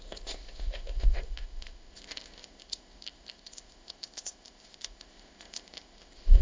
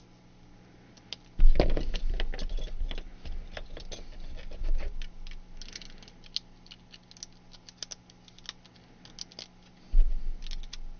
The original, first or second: second